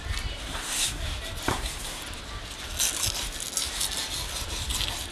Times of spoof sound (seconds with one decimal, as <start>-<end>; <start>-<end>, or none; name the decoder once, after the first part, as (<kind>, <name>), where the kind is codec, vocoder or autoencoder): 0.4-1.0 (codec, SNAC); 1.5-2.0